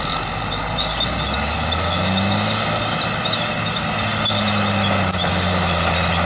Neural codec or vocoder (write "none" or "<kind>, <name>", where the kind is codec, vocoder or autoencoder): none